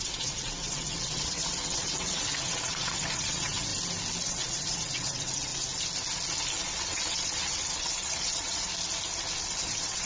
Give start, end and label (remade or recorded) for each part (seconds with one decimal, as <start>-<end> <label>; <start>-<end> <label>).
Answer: 0.0-3.7 remade; 3.7-4.2 recorded; 4.2-5.5 remade; 5.5-6.6 recorded; 6.6-8.7 remade; 8.7-9.4 recorded; 9.4-10.1 remade